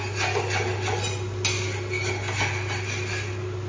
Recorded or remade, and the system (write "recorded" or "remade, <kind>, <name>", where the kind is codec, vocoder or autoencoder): recorded